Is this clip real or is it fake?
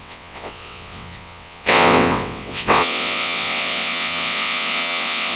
fake